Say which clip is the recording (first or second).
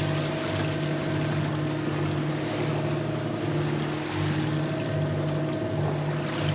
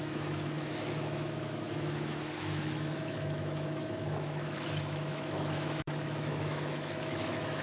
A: first